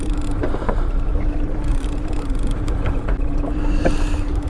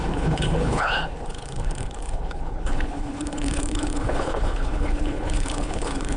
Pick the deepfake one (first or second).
second